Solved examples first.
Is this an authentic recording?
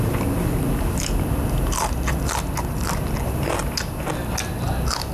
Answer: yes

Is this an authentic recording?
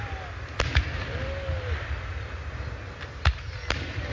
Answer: yes